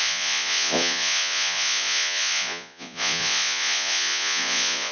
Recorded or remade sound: remade